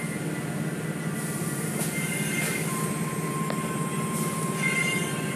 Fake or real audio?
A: real